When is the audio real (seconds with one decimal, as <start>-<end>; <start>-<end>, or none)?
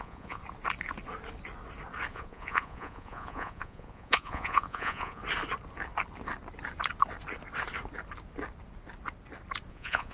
0.4-2.1; 5.2-9.7